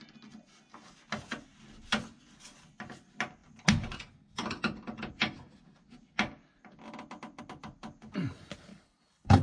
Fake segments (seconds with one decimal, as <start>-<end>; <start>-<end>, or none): 8.7-9.4